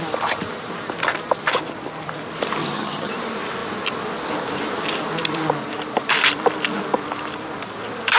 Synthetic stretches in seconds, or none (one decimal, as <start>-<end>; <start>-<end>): 2.6-3.1